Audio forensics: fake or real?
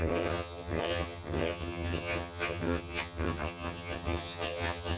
fake